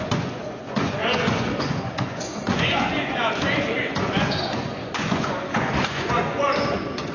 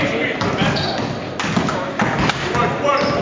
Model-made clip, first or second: first